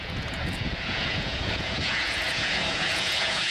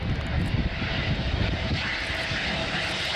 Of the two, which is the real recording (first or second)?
second